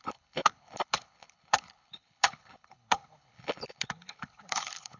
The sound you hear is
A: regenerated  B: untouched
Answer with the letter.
A